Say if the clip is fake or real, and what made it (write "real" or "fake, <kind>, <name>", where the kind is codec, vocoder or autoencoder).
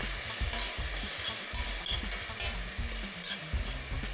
real